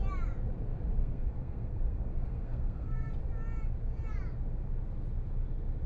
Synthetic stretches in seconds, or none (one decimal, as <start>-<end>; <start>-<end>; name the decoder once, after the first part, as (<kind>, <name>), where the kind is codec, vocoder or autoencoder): 1.0-3.1 (codec, SNAC)